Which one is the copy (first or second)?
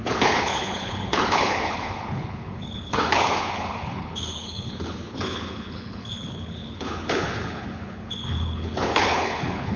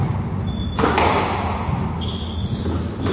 first